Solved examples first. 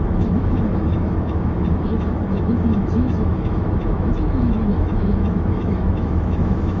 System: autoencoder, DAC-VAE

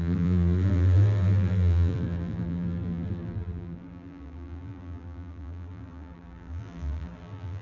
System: vocoder, BigVGAN v2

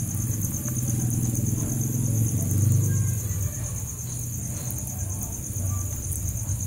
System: none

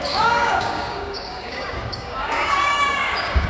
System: codec, DAC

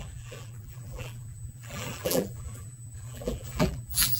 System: vocoder, BigVGAN v2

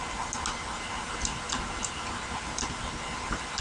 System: none